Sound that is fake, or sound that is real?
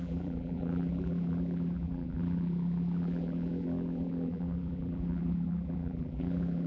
fake